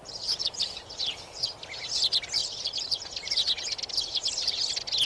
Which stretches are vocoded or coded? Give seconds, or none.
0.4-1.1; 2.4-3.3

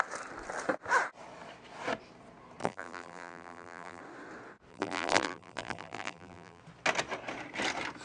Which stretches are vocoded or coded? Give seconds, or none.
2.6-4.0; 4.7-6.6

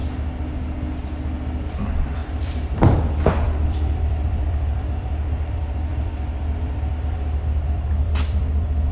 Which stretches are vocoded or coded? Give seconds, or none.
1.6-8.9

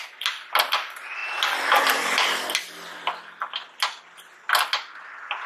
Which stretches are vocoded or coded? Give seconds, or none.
none

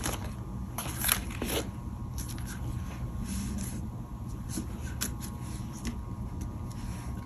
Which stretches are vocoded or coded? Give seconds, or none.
2.1-2.7

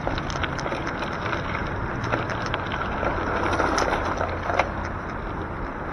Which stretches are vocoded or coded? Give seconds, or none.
none